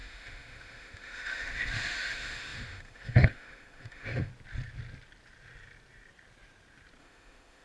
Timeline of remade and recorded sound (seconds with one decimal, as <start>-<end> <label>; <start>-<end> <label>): 0.0-4.3 remade; 4.3-7.0 recorded; 7.0-7.6 remade